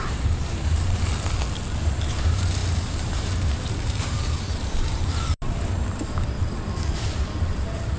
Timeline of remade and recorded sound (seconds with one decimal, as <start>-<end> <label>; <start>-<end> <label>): 0.0-1.1 remade; 1.1-2.1 recorded; 2.1-8.0 remade